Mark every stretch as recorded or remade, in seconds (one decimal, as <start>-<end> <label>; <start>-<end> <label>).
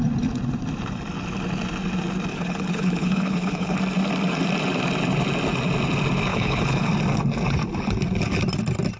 0.0-2.3 recorded; 2.3-3.8 remade; 3.8-6.3 recorded; 6.3-6.9 remade; 6.9-9.0 recorded